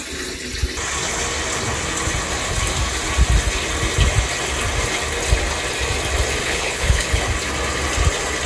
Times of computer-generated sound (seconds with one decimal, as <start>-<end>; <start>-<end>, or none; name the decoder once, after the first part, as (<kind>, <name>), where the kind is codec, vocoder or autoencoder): 6.4-7.2 (codec, HILCodec)